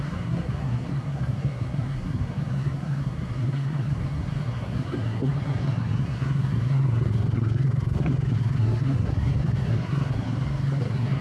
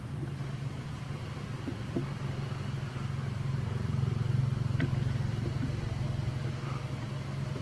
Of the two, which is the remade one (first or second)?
first